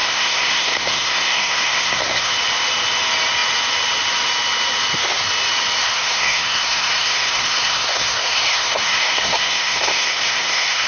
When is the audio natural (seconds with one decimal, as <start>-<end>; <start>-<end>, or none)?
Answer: 2.3-5.8